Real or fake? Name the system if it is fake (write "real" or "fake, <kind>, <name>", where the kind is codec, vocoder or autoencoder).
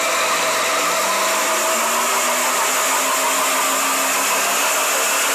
real